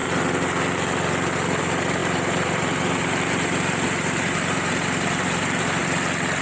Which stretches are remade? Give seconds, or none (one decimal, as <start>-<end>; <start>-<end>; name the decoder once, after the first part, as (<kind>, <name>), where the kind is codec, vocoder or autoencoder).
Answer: 2.0-5.8 (vocoder, BigVGAN v2)